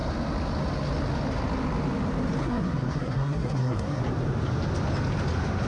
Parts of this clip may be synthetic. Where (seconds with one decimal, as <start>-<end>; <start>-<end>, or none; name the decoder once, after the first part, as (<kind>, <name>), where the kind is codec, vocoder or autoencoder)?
2.4-4.0 (codec, SNAC)